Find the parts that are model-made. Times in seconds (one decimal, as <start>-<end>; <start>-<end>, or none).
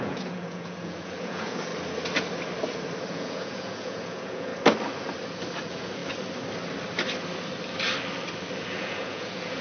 0.0-1.7; 3.1-4.5; 5.6-6.0; 8.6-9.6